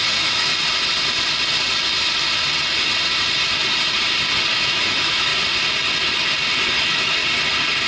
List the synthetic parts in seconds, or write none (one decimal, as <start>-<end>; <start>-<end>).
0.0-0.5; 4.5-5.3; 6.7-7.2